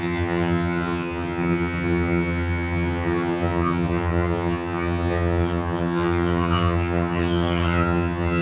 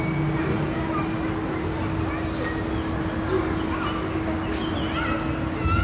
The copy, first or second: first